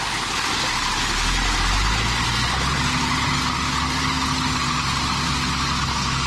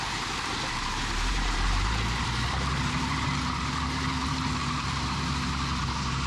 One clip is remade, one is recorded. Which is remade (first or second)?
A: second